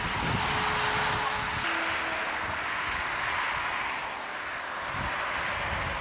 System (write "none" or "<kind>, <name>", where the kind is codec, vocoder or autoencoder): none